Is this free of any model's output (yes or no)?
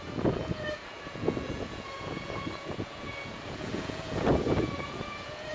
no